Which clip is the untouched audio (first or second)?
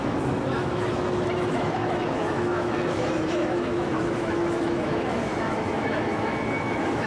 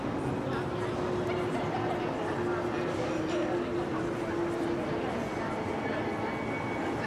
second